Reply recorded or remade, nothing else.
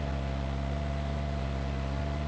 recorded